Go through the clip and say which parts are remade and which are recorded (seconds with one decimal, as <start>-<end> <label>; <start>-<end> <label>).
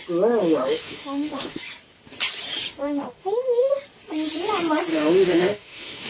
0.0-0.4 recorded; 0.4-1.6 remade; 1.6-2.8 recorded; 2.8-3.7 remade; 3.7-4.9 recorded; 4.9-6.1 remade